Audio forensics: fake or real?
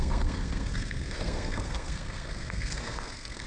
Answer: fake